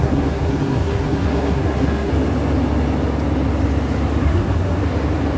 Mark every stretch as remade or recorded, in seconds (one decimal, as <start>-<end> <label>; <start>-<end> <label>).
0.0-2.1 remade; 2.1-4.2 recorded; 4.2-4.8 remade; 4.8-5.4 recorded